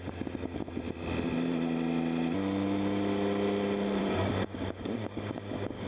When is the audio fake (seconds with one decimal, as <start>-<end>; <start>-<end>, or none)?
0.0-0.6; 4.0-5.9